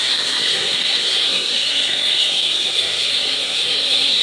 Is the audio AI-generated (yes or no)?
yes